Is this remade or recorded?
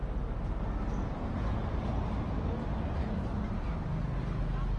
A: recorded